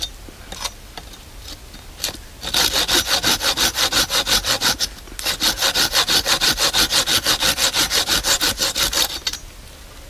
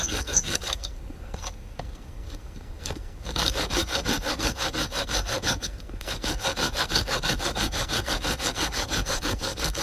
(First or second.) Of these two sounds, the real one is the first